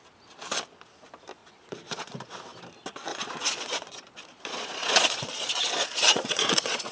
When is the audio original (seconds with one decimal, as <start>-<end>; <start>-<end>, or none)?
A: 0.0-1.4; 2.4-3.1